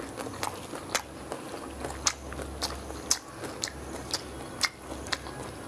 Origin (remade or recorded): recorded